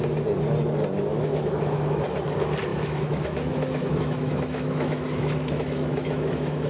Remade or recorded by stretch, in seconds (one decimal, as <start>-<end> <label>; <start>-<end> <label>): 0.0-1.1 recorded; 1.1-2.0 remade; 2.0-2.7 recorded; 2.7-6.7 remade